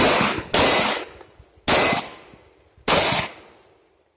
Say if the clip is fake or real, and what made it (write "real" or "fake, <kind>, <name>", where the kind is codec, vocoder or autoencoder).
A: real